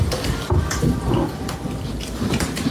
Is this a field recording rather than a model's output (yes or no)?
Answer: no